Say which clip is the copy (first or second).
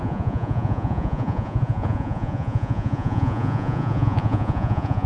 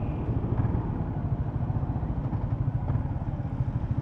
first